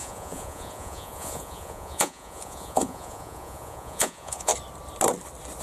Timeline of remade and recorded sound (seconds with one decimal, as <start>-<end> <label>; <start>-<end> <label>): 0.0-4.5 remade; 4.5-5.6 recorded